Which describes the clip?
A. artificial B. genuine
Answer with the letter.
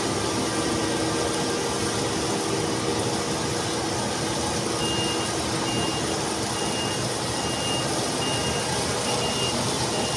B